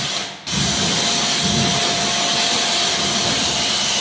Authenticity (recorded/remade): recorded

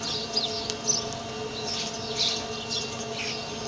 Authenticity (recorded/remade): recorded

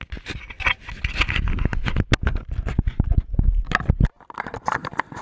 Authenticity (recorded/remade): recorded